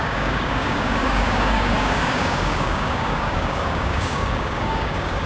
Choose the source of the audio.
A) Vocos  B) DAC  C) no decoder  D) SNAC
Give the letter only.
B